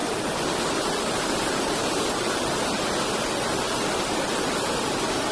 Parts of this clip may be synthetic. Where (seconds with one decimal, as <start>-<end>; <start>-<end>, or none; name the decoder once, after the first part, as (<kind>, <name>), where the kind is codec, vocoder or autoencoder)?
none